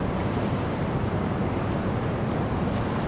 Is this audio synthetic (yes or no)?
yes